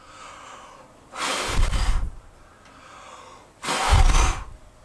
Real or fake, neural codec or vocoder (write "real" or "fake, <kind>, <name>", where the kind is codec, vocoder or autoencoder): real